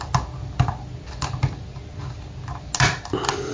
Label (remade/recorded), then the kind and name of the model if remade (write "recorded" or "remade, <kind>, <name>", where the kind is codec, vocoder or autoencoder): recorded